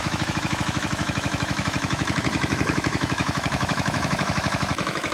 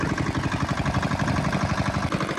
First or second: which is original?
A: second